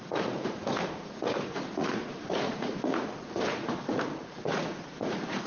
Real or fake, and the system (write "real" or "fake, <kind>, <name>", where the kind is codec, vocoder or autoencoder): fake, vocoder, Vocos